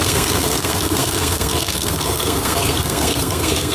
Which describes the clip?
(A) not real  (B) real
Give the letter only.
A